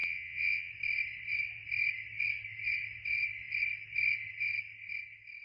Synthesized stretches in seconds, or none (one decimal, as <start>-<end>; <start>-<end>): 0.0-0.7

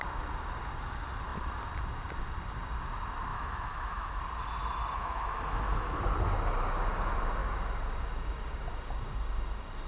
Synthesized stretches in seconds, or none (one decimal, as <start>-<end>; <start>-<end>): 3.3-4.2; 5.0-6.0

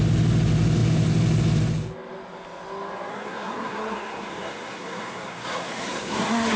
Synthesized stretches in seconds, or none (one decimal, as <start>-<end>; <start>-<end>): 3.1-6.6

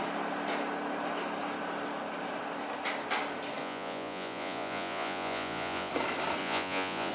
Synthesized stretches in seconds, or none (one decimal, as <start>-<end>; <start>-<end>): 3.6-5.9; 6.4-7.1

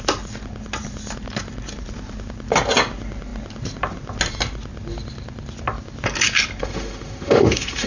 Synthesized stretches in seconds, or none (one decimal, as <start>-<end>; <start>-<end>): 6.6-7.9

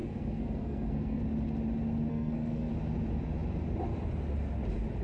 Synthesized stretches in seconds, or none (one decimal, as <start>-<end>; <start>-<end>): 0.0-1.2; 2.1-2.7